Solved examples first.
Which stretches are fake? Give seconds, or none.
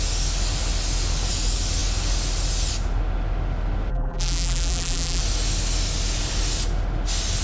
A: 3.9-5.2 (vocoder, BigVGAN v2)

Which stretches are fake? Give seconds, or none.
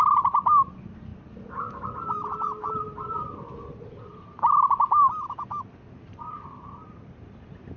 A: none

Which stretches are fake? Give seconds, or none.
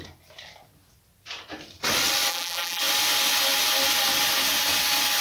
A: 2.3-2.8 (vocoder, BigVGAN v2)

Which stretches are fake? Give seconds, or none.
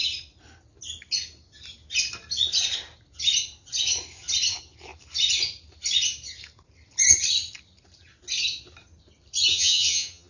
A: 9.5-10.3 (vocoder, HiFi-GAN)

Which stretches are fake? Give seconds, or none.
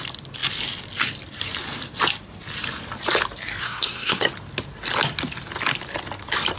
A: 3.6-4.3 (codec, SNAC)